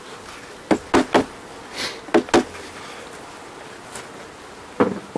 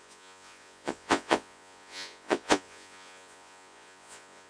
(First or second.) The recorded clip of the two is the first